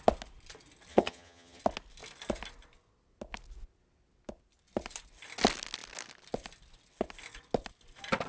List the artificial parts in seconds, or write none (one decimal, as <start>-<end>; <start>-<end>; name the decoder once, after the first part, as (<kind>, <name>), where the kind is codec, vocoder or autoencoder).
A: 0.9-1.6 (vocoder, HiFi-GAN)